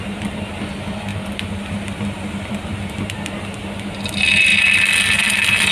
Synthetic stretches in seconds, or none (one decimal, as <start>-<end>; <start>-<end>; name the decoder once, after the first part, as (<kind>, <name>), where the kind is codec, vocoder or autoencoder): none